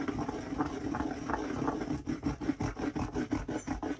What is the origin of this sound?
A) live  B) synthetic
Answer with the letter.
A